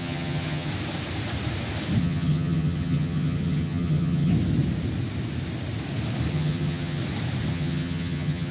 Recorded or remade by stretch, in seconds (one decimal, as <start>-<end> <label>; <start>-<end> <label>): 0.0-0.7 remade; 0.7-2.0 recorded; 2.0-4.3 remade; 4.3-6.3 recorded; 6.3-7.0 remade; 7.0-7.5 recorded; 7.5-8.5 remade